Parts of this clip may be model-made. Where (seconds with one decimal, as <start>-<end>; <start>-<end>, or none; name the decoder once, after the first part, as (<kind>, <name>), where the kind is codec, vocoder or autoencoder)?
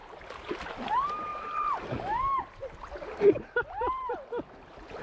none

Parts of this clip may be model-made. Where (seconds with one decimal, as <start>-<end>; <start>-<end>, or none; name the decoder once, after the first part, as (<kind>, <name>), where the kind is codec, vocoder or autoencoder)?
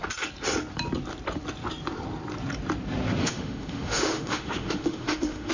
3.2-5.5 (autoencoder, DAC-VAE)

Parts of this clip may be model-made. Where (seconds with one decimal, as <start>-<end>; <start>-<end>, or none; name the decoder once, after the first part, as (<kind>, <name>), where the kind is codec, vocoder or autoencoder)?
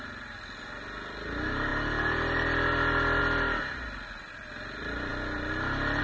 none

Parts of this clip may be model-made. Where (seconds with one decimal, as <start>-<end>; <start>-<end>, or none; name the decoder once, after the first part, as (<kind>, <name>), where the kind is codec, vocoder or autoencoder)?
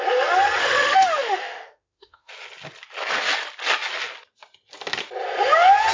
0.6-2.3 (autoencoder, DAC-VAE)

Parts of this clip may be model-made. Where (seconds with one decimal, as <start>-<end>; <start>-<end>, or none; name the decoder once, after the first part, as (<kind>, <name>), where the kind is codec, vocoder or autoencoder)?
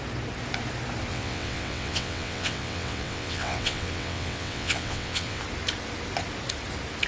1.1-5.4 (vocoder, WaveNeXt)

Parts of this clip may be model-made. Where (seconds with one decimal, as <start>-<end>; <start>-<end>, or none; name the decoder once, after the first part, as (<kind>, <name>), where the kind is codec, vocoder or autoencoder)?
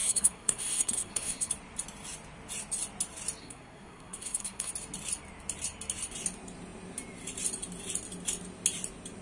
0.0-1.5 (codec, SNAC); 3.4-4.7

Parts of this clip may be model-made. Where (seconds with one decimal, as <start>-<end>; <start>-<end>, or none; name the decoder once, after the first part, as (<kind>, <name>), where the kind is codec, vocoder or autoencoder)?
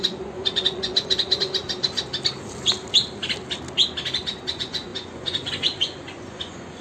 0.0-1.6 (vocoder, Vocos); 4.2-6.8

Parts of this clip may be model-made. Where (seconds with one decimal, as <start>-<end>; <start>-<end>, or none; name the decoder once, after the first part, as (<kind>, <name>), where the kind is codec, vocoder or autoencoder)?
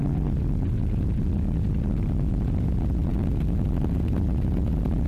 none